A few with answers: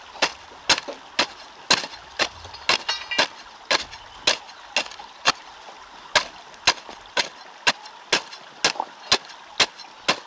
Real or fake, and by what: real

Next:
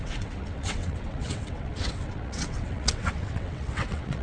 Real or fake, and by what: fake, vocoder, WaveNeXt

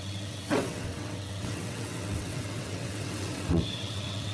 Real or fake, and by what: fake, vocoder, WaveNeXt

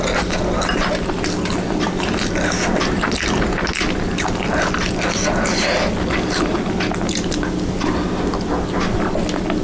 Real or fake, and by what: real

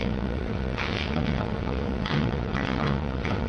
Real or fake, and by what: fake, vocoder, WaveNeXt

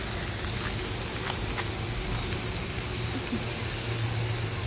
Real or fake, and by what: real